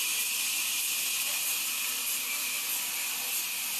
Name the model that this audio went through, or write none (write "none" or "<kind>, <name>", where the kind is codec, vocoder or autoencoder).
none